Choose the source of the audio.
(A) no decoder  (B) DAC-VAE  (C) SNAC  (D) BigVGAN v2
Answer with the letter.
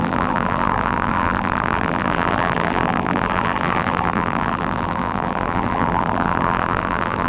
D